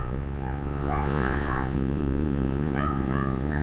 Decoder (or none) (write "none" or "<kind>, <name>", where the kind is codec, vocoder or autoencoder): vocoder, Vocos